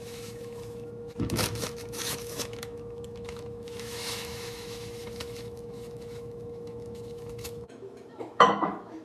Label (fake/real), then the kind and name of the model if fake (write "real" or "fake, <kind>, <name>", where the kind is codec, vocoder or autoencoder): fake, autoencoder, DAC-VAE